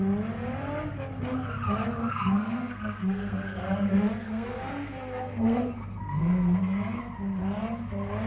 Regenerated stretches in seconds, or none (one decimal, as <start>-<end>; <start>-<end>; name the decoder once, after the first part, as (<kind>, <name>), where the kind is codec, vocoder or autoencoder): 2.0-7.0 (codec, SNAC)